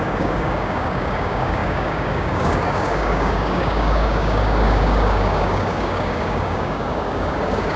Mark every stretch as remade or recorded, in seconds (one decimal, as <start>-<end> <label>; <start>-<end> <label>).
0.0-7.8 remade